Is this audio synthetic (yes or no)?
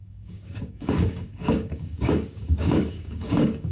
yes